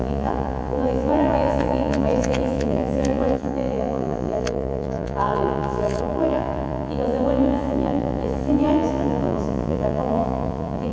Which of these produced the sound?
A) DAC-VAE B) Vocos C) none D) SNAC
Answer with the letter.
B